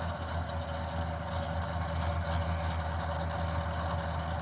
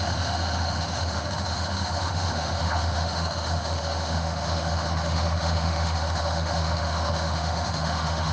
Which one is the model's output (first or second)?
second